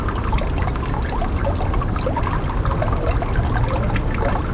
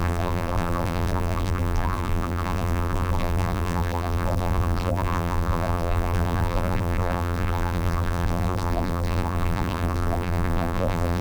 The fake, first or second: second